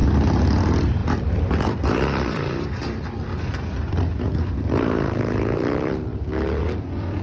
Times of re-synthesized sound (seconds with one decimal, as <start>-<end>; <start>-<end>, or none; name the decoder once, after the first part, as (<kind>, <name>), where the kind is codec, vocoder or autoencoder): 0.6-6.1 (vocoder, BigVGAN v2); 6.6-7.2